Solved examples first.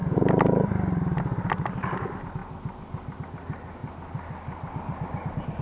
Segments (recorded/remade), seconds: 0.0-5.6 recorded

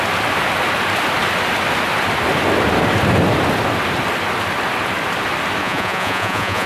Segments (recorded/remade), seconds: 0.0-5.6 recorded; 5.6-6.7 remade

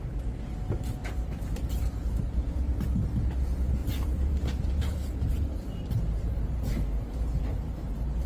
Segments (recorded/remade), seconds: 0.0-1.0 recorded; 1.0-2.7 remade; 2.7-3.8 recorded; 3.8-8.3 remade

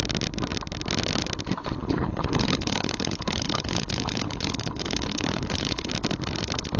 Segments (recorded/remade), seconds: 0.0-1.8 recorded; 1.8-5.9 remade; 5.9-6.8 recorded